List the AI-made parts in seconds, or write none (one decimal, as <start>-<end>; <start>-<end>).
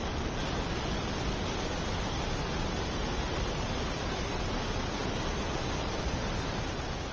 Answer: none